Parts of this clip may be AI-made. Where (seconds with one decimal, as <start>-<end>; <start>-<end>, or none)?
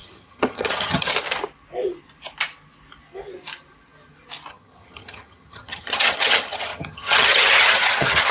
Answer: 0.0-1.1; 4.5-8.3